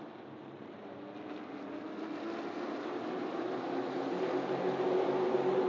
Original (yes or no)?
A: yes